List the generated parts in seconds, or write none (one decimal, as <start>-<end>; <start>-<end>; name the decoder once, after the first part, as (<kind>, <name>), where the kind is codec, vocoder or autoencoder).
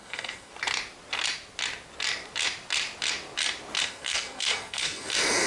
0.0-0.5 (codec, SNAC); 3.8-5.5